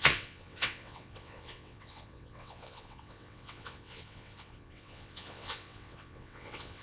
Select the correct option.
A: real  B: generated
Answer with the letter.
B